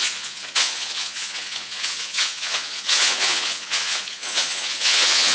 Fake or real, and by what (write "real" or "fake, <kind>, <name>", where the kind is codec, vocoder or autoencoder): fake, vocoder, Vocos